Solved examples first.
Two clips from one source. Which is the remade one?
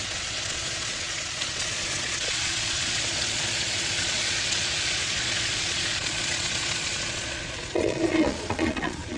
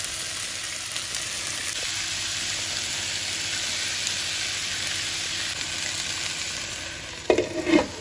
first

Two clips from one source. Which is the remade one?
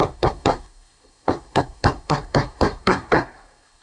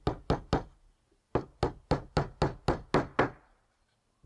first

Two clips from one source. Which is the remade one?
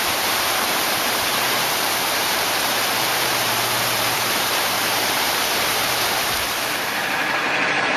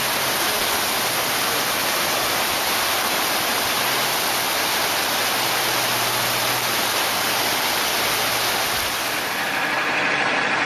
first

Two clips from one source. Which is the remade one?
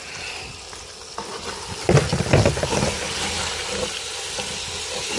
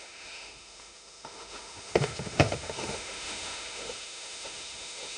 second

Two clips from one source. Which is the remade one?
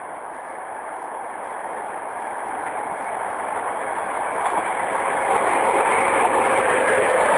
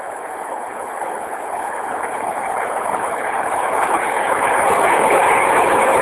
second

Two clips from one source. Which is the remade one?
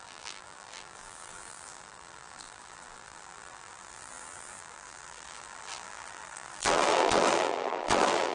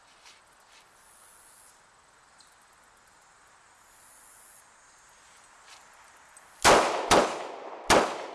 first